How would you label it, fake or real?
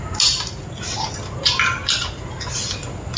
real